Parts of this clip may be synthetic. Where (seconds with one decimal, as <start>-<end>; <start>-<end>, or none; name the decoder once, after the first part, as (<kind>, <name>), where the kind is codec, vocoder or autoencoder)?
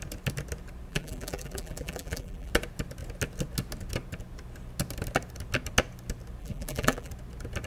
0.9-2.5 (vocoder, BigVGAN v2); 6.4-7.1